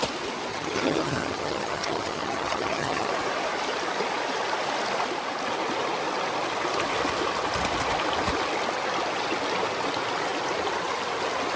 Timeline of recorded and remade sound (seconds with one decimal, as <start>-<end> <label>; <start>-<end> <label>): 0.0-0.5 recorded; 0.5-3.1 remade; 3.1-11.6 recorded